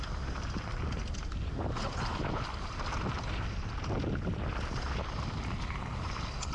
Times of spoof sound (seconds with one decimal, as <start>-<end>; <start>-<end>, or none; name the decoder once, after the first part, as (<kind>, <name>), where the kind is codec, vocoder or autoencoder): none